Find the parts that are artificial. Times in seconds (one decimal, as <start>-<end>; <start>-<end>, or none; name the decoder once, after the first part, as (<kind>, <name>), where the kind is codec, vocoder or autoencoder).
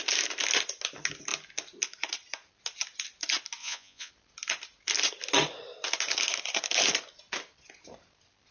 3.6-4.1 (vocoder, Vocos)